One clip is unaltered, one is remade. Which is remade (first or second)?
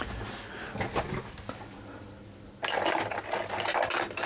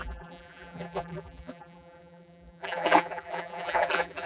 second